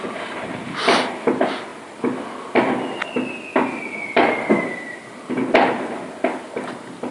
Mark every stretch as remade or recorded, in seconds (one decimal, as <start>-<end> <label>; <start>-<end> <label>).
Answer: 0.0-7.1 recorded